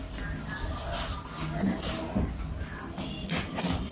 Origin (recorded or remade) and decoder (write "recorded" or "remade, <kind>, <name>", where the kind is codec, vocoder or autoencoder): recorded